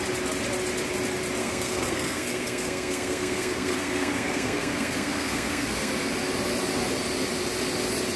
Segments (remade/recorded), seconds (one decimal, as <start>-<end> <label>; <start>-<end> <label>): 0.0-1.4 recorded; 1.4-5.9 remade; 5.9-8.2 recorded